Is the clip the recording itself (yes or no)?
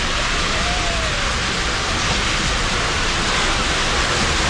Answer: yes